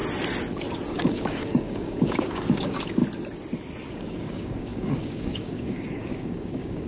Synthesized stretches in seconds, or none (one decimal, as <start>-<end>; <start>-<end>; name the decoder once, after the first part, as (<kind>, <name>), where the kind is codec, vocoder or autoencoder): 0.9-3.0 (codec, DAC); 3.9-6.9